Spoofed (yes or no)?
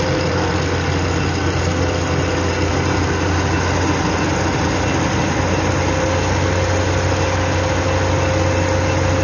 no